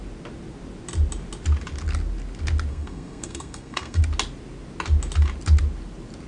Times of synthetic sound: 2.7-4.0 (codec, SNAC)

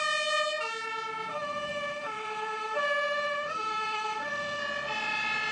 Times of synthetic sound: 1.3-4.6 (autoencoder, DAC-VAE)

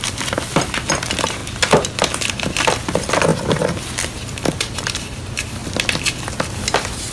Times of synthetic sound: 0.0-1.4 (vocoder, BigVGAN v2); 2.1-5.6; 6.4-7.1

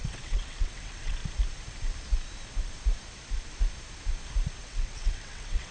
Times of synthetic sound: 0.0-1.2 (vocoder, WaveNeXt); 4.6-5.7

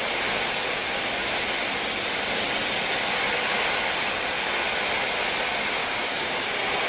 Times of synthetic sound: 5.8-6.5 (codec, DAC)

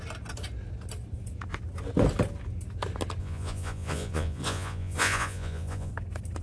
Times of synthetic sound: 3.2-5.9 (vocoder, Vocos)

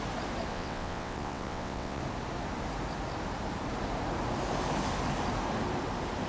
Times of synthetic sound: 0.5-2.0 (vocoder, WaveNeXt)

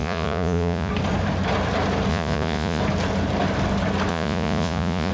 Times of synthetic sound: 0.0-0.9 (vocoder, Vocos); 2.1-2.8; 4.1-5.1